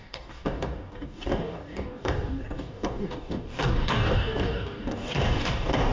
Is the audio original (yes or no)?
no